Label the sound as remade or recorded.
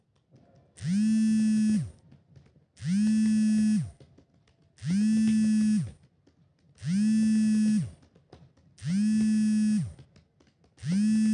recorded